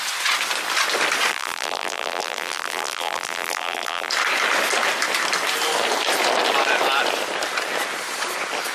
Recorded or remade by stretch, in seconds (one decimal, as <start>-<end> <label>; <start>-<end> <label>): 0.0-1.3 recorded; 1.3-4.1 remade; 4.1-8.7 recorded